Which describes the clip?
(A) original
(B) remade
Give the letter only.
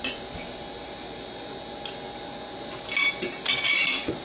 A